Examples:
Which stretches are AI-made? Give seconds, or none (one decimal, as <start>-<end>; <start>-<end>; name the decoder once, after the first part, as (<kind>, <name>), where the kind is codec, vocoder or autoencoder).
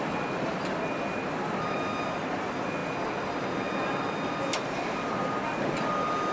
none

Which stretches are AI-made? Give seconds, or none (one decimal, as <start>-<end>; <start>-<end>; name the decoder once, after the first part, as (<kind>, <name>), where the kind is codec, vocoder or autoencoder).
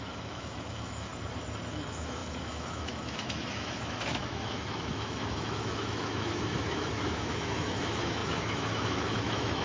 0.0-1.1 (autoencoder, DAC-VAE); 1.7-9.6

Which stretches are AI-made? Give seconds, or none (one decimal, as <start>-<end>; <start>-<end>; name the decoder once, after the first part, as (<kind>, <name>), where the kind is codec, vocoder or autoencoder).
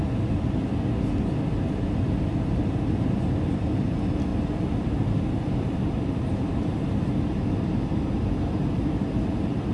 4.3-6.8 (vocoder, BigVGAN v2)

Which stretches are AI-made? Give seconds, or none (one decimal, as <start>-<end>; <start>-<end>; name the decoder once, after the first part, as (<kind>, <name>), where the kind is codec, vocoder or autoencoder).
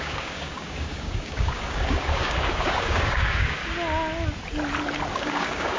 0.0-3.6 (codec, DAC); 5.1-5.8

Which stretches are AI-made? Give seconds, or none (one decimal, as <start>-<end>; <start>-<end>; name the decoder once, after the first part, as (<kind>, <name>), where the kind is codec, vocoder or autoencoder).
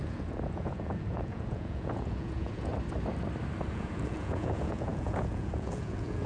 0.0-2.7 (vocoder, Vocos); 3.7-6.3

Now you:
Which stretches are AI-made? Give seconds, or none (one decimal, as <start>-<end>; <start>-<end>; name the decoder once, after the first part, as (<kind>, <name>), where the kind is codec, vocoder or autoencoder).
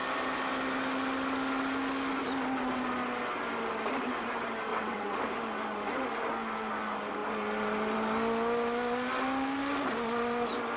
4.7-5.2 (vocoder, WaveNeXt)